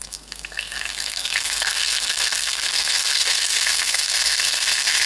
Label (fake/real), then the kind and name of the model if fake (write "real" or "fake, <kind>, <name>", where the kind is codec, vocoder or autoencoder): fake, codec, SNAC